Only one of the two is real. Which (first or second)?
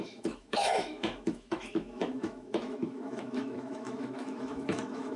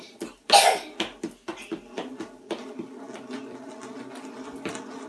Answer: second